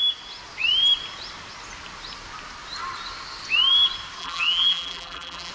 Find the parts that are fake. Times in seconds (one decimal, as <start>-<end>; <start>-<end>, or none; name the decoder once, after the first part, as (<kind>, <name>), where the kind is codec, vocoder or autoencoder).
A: 4.2-5.5 (vocoder, BigVGAN v2)